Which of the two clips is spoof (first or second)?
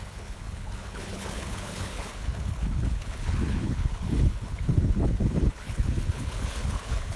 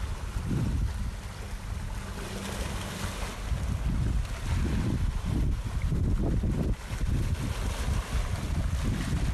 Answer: first